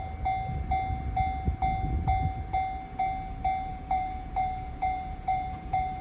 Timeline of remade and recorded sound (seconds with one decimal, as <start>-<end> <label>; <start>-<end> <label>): 0.0-3.7 recorded; 3.7-6.0 remade